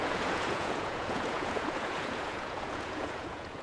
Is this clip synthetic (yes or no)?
yes